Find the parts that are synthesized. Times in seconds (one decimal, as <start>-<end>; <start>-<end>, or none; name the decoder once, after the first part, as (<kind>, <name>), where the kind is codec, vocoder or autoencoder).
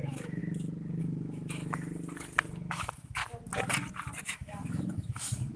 0.0-0.4 (autoencoder, DAC-VAE); 1.0-1.6; 2.5-3.2; 4.2-5.6